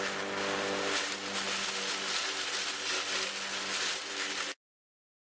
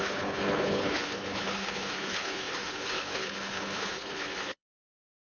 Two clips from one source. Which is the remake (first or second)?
second